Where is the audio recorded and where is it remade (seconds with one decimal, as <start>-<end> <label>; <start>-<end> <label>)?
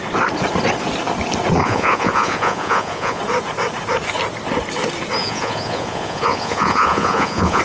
0.0-1.6 recorded; 1.6-3.2 remade; 3.2-5.2 recorded; 5.2-7.6 remade